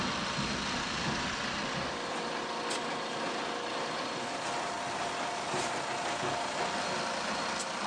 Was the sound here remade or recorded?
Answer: recorded